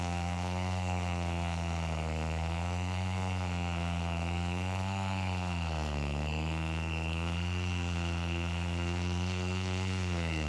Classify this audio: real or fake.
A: fake